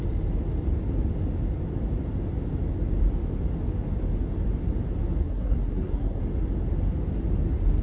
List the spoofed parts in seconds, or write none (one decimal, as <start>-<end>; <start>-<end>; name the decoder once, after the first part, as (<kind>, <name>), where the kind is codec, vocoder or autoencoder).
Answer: 5.2-6.2 (codec, SNAC)

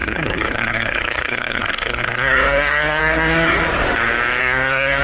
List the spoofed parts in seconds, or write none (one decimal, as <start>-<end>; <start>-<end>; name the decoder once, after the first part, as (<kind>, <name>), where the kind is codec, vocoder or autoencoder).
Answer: 0.0-3.6 (codec, SNAC); 4.4-5.0

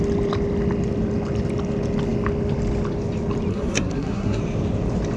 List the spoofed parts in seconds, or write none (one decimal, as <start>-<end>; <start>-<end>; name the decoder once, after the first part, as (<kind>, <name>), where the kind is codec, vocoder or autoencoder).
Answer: 3.5-4.4 (codec, SNAC)